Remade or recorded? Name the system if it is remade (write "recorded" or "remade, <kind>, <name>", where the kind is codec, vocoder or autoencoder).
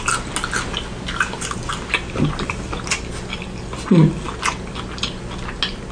recorded